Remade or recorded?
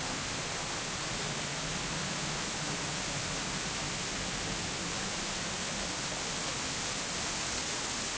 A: recorded